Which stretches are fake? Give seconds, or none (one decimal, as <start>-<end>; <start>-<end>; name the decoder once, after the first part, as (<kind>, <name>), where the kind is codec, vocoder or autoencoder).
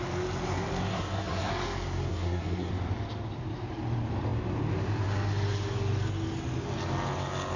0.9-1.5 (codec, SNAC); 2.1-2.7